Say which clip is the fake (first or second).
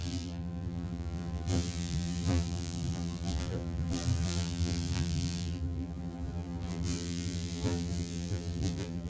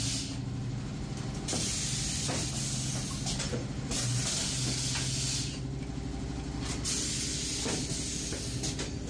first